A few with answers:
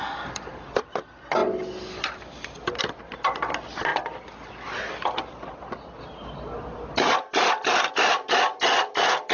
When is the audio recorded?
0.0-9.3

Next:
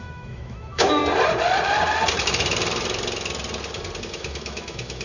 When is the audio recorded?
1.0-4.0

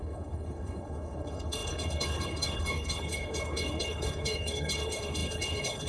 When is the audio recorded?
none

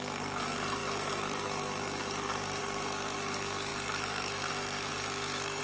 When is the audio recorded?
none

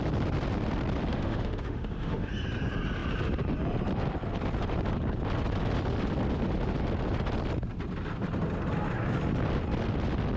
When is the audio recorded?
0.0-1.1; 2.3-10.4